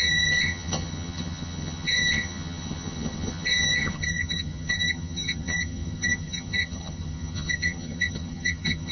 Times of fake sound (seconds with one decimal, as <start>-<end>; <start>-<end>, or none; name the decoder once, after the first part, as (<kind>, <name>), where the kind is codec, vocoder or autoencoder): 0.0-8.9 (vocoder, HiFi-GAN)